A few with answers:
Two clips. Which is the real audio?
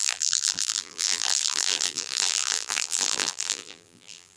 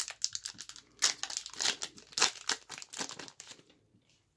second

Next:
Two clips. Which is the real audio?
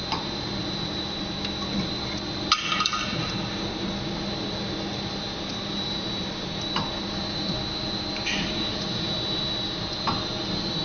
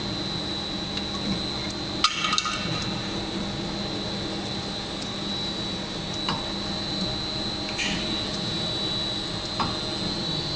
second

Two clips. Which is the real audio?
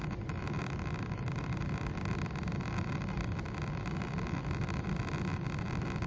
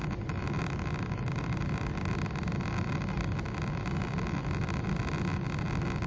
second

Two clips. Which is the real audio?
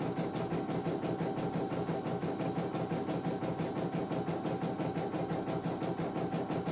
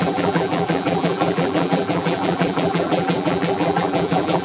first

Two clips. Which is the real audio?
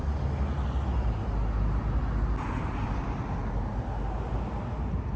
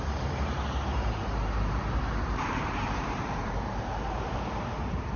first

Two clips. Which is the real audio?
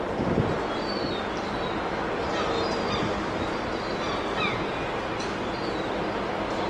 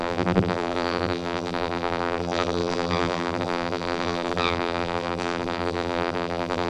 first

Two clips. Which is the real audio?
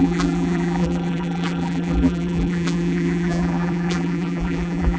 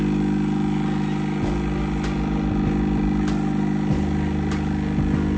second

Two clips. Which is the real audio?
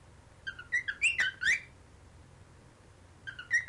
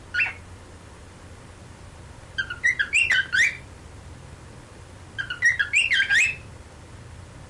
first